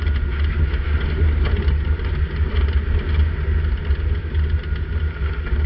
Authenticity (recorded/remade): recorded